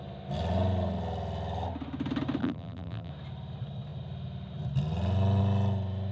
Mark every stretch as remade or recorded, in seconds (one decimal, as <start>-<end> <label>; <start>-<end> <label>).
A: 0.0-2.4 recorded; 2.4-3.1 remade; 3.1-6.1 recorded